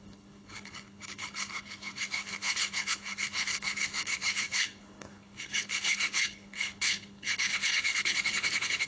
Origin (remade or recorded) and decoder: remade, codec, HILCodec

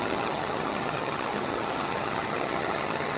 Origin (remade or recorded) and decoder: remade, vocoder, HiFi-GAN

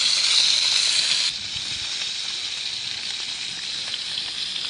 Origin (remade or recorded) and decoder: recorded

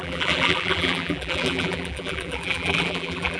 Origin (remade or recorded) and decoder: remade, vocoder, BigVGAN v2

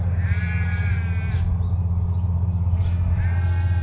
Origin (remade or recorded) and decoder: recorded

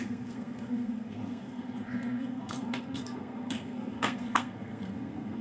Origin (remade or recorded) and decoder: remade, codec, SNAC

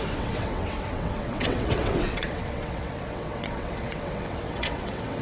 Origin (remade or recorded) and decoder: remade, vocoder, WaveNeXt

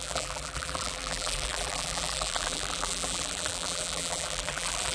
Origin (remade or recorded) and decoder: remade, vocoder, BigVGAN v2